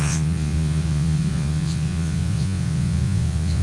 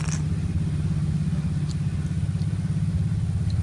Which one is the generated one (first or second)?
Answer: first